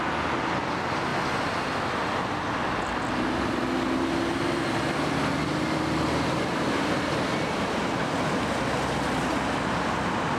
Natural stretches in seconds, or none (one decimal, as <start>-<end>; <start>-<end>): 0.0-10.4